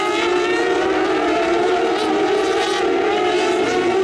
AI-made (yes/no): no